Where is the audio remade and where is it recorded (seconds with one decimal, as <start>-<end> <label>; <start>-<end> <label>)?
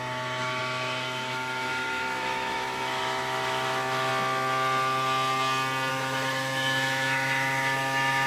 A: 0.0-4.1 remade; 4.1-5.9 recorded; 5.9-8.3 remade